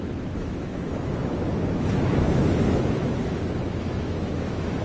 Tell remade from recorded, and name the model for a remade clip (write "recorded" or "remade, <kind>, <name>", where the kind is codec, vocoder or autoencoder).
remade, autoencoder, DAC-VAE